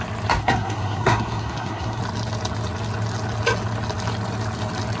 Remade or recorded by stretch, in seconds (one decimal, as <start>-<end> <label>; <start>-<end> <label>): 0.0-0.4 recorded; 0.4-2.0 remade; 2.0-5.0 recorded